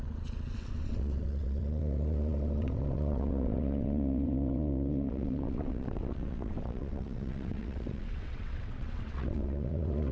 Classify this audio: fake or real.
fake